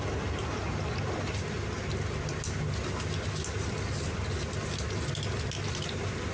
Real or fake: real